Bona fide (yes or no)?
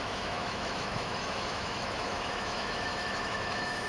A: no